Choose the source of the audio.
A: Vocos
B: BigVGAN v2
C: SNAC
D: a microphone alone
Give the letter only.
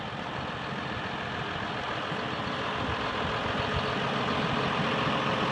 D